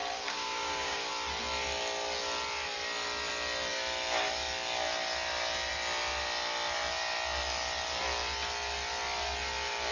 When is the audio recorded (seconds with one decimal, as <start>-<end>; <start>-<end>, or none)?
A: 1.1-9.9